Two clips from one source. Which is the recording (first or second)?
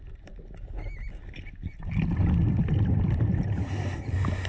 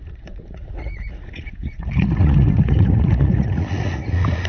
first